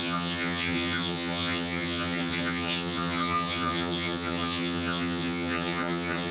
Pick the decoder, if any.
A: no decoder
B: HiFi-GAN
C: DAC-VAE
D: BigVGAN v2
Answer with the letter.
B